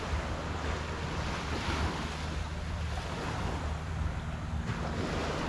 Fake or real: real